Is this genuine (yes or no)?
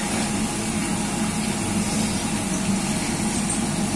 yes